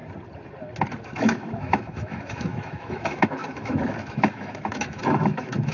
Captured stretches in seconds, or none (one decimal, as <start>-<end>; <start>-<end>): 0.0-1.0